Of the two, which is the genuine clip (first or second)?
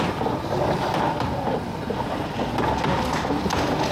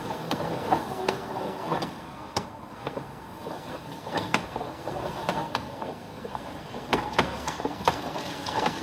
first